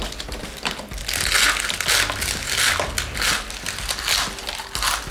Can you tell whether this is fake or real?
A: real